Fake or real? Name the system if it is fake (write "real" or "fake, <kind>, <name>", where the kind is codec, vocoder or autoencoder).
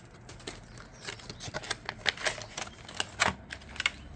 real